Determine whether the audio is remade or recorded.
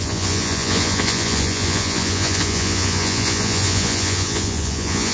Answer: remade